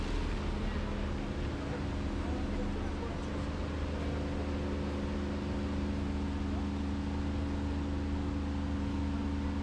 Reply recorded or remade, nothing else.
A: recorded